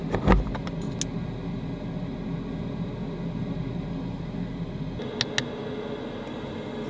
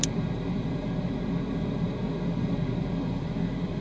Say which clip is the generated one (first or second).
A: second